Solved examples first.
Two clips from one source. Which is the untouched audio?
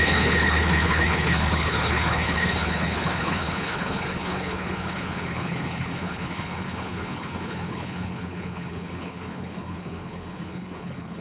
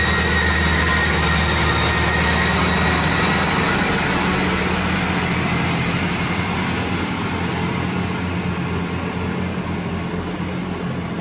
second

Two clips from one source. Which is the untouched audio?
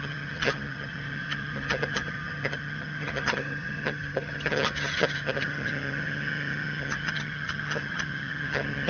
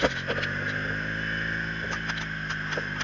second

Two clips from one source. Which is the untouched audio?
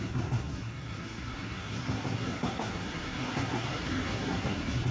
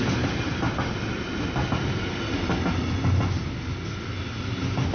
second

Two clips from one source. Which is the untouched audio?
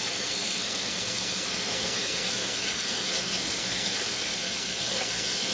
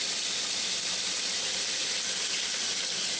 second